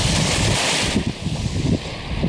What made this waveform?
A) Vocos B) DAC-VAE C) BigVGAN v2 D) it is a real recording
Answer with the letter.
D